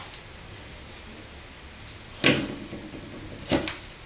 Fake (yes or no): no